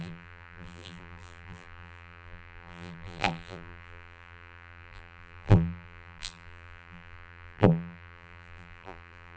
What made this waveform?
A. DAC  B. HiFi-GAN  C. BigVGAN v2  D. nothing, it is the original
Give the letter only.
C